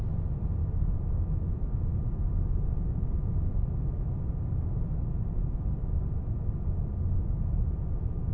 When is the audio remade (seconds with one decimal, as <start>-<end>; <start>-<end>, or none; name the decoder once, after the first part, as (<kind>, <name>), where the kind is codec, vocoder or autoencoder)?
0.6-2.0 (autoencoder, DAC-VAE)